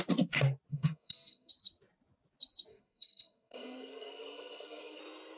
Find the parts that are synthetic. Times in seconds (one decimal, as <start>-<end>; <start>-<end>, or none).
0.7-1.5; 2.7-5.0